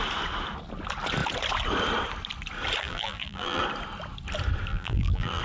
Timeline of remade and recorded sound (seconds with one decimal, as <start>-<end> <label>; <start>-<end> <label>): 0.0-2.8 recorded; 2.8-3.6 remade; 3.6-4.7 recorded; 4.7-5.4 remade